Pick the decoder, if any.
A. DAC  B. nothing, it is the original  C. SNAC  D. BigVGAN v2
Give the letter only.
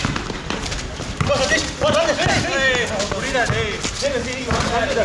B